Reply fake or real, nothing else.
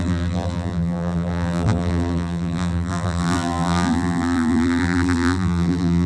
fake